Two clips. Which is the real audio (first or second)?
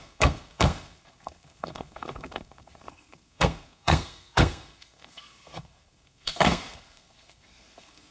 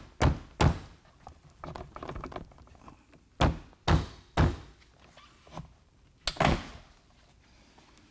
second